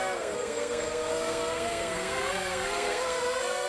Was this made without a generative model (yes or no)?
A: no